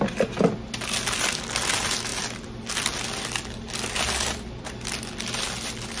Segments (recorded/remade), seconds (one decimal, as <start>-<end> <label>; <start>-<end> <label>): 0.0-6.0 recorded